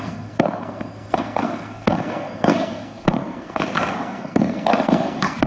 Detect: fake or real fake